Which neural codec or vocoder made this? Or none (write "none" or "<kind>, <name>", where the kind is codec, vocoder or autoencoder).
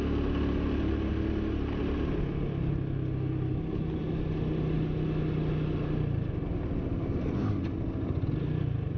none